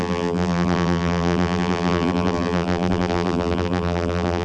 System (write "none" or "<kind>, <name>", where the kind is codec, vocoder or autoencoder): vocoder, BigVGAN v2